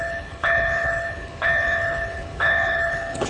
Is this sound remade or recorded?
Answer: remade